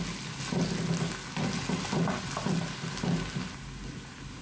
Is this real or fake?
real